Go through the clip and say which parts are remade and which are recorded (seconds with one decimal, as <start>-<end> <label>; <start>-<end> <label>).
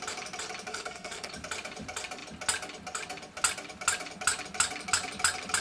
0.0-0.7 recorded; 0.7-1.3 remade; 1.3-5.6 recorded